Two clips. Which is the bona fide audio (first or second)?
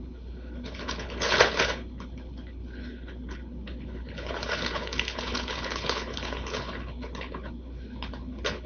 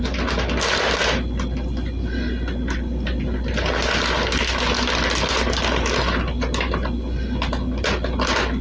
second